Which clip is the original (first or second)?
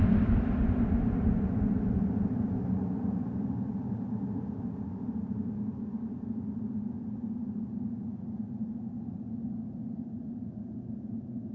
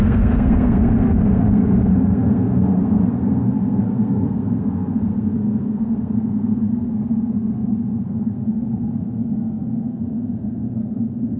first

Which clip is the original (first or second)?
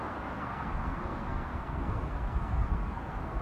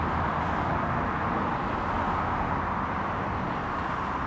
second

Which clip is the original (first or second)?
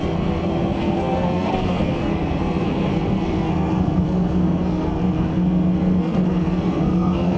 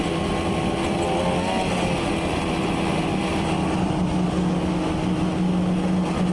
second